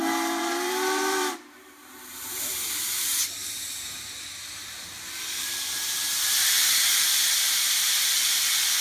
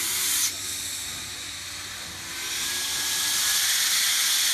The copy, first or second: first